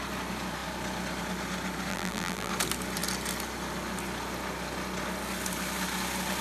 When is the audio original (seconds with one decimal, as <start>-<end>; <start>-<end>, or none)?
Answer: 0.0-1.9; 2.5-6.4